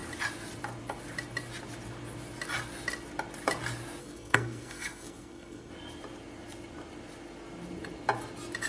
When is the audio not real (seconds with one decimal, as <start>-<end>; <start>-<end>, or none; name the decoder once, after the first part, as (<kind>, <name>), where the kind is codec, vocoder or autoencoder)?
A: 4.0-5.7 (codec, SNAC)